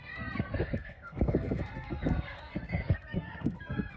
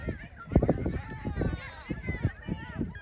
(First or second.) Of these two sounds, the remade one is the first